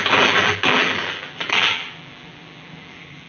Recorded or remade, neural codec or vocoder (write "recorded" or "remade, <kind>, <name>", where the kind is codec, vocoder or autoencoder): remade, vocoder, BigVGAN v2